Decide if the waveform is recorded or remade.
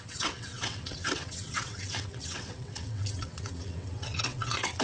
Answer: remade